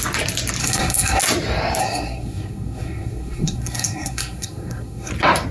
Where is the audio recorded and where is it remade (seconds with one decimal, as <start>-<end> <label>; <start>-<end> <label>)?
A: 0.0-0.6 recorded; 0.6-1.2 remade; 1.2-1.8 recorded; 1.8-5.1 remade; 5.1-5.5 recorded